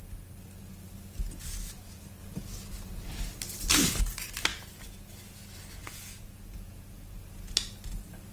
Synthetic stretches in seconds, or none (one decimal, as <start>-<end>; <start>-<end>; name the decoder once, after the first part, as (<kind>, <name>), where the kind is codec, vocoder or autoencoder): 4.5-5.1 (vocoder, Vocos); 5.8-7.2